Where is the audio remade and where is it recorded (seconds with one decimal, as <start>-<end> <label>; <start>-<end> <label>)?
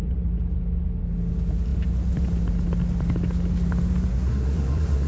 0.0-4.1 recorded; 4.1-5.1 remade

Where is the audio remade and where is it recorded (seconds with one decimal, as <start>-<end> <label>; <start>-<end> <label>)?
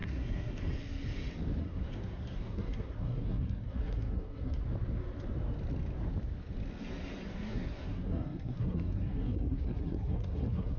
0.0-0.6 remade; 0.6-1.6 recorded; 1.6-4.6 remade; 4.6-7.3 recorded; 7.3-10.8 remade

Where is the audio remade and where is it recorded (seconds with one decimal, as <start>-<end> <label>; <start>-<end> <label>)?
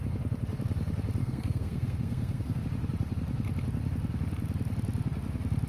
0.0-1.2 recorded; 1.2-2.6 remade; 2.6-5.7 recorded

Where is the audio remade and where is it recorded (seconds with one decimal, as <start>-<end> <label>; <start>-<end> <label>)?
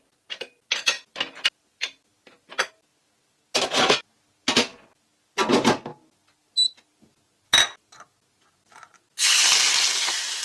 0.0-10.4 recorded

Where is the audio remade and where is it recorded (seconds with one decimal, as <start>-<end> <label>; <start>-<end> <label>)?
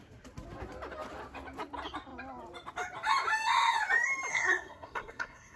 0.0-4.3 recorded; 4.3-5.6 remade